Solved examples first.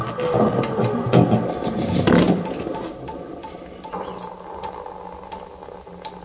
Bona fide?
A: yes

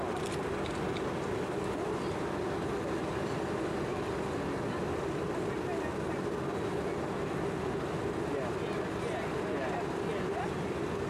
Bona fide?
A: yes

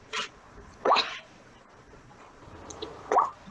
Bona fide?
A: no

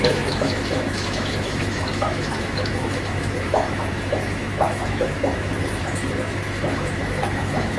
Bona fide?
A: no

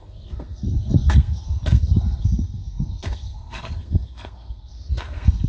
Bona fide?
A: no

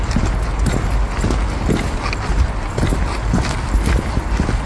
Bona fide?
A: yes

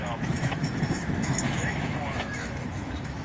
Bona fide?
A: no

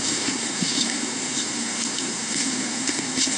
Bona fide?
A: no